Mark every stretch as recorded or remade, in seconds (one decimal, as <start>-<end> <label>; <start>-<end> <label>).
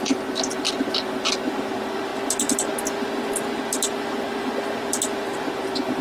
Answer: 0.0-6.0 recorded